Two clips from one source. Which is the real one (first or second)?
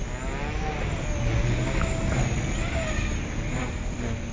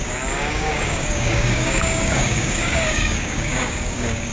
first